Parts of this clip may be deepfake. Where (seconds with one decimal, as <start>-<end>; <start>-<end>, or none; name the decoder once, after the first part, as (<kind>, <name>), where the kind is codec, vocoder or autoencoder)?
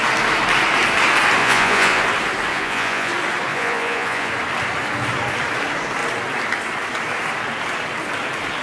1.4-2.0 (vocoder, Vocos); 2.5-3.1; 3.5-4.3